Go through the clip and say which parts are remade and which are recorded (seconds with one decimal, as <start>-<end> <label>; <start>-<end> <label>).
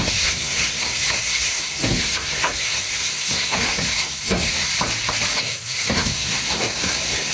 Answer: 0.0-4.7 remade; 4.7-5.4 recorded; 5.4-7.3 remade